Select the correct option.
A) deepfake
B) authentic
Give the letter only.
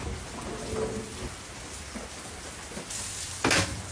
B